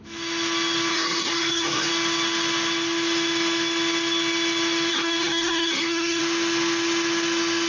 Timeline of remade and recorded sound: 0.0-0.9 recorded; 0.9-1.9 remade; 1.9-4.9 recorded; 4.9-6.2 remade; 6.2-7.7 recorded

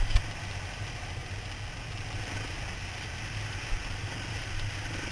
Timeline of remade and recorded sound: 0.0-5.1 recorded

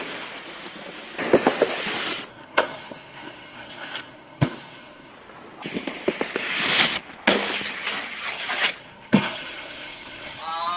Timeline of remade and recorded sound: 0.0-2.3 recorded; 2.3-5.1 remade; 5.1-8.8 recorded; 8.8-10.4 remade; 10.4-10.8 recorded

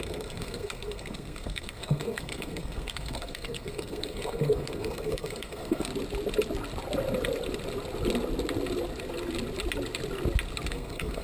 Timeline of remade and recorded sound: 0.0-5.9 remade; 5.9-10.7 recorded; 10.7-11.2 remade

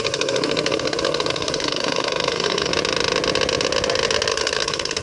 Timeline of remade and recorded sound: 0.0-2.7 remade; 2.7-4.3 recorded; 4.3-5.0 remade

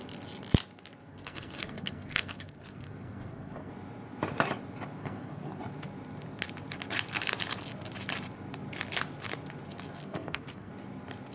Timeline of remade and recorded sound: 0.0-1.1 recorded; 1.1-3.7 remade; 3.7-5.0 recorded; 5.0-5.6 remade; 5.6-10.0 recorded; 10.0-10.7 remade; 10.7-11.3 recorded

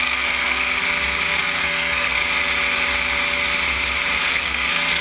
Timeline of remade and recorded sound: 0.0-0.8 remade; 0.8-1.3 recorded; 1.3-2.2 remade; 2.2-4.3 recorded; 4.3-5.0 remade

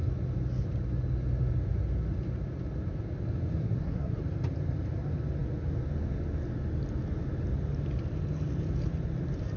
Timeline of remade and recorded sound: 0.0-3.6 recorded; 3.6-4.2 remade; 4.2-9.6 recorded